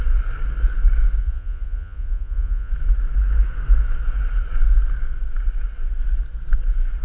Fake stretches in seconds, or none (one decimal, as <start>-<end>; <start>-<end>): 1.2-2.7